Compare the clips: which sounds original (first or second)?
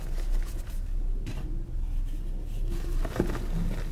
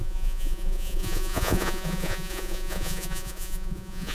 first